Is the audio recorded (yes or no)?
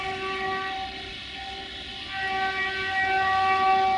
yes